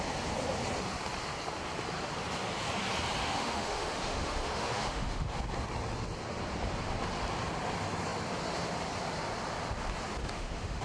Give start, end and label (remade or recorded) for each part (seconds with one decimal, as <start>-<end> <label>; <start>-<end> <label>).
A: 0.0-3.2 recorded; 3.2-5.3 remade; 5.3-10.2 recorded; 10.2-10.8 remade